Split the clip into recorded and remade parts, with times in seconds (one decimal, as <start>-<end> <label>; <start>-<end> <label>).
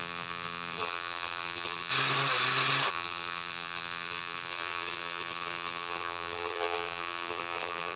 0.0-1.9 remade; 1.9-2.9 recorded; 2.9-8.0 remade